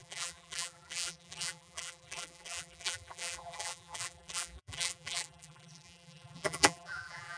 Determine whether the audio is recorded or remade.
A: remade